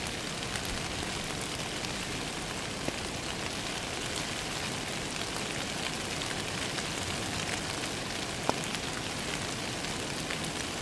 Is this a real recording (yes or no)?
yes